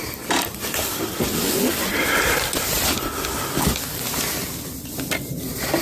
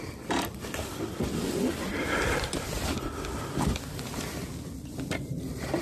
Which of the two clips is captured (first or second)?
first